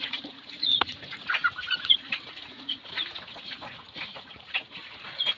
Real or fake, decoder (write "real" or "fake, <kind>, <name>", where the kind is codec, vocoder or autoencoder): fake, vocoder, Vocos